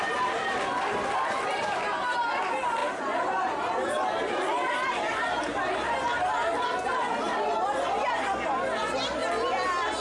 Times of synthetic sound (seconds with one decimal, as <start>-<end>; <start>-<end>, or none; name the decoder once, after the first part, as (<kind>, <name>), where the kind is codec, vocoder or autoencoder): none